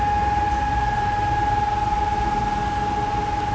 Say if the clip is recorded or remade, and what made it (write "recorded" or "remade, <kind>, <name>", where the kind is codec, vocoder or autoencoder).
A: recorded